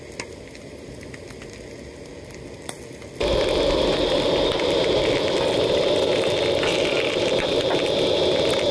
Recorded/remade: recorded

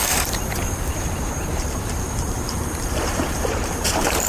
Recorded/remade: remade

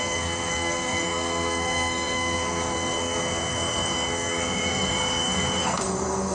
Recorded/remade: remade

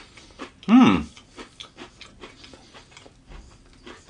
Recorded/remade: recorded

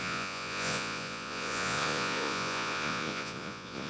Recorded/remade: remade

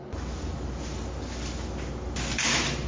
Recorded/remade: recorded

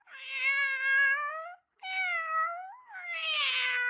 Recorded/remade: recorded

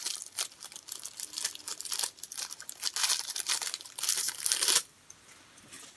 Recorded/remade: remade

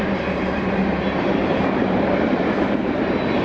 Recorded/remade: remade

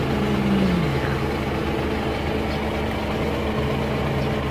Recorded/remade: recorded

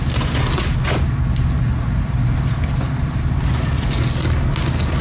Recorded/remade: recorded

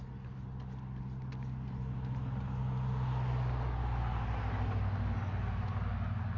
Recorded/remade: recorded